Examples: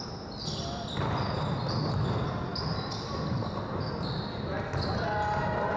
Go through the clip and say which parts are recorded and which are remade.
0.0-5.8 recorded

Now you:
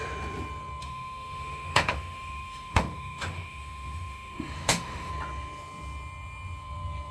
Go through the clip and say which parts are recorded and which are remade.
0.0-0.8 recorded; 0.8-5.1 remade; 5.1-7.1 recorded

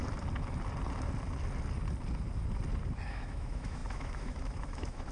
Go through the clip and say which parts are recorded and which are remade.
0.0-3.1 recorded; 3.1-5.1 remade